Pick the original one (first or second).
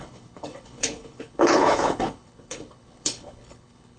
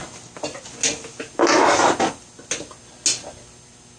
second